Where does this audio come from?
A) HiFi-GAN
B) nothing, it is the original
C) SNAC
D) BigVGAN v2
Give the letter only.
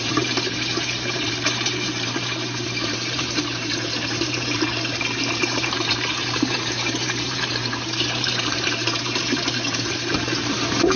D